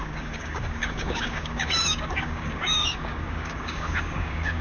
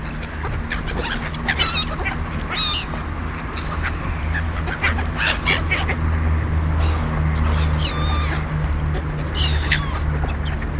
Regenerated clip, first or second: first